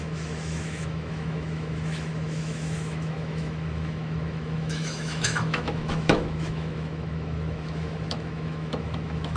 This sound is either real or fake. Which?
fake